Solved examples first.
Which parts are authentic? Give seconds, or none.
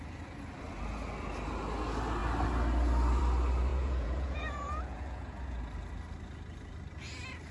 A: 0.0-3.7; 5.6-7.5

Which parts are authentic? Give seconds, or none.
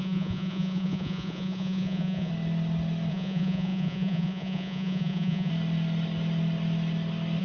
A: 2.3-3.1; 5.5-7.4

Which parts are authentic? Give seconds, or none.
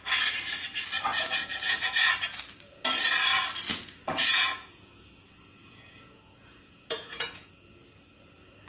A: 0.0-1.1; 2.1-3.7; 5.1-5.6; 7.5-8.7